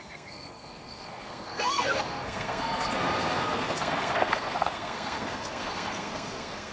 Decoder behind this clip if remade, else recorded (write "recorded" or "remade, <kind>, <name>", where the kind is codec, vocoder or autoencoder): remade, codec, SNAC